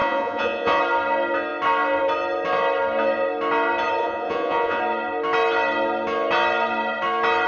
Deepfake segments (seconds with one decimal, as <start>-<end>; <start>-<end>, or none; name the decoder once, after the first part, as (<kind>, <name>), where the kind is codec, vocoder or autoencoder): 0.0-0.8 (vocoder, Vocos); 4.0-4.8